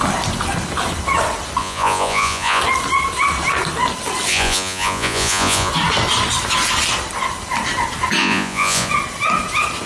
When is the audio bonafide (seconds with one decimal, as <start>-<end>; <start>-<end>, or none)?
0.0-1.6; 2.6-4.3; 5.7-8.2; 8.9-9.9